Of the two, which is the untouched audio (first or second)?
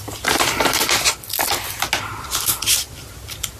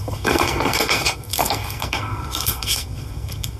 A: first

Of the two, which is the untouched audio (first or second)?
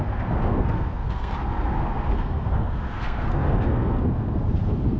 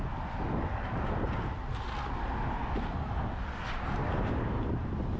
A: second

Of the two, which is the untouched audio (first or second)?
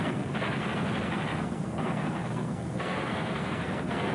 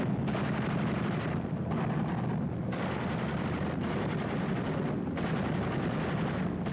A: second